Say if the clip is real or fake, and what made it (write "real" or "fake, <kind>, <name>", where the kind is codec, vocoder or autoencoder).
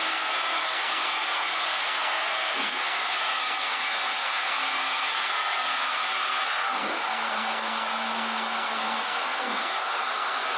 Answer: fake, codec, SNAC